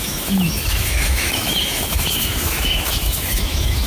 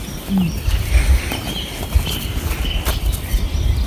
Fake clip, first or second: first